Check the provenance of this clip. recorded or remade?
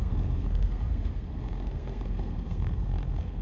remade